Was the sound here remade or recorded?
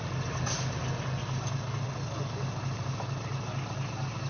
recorded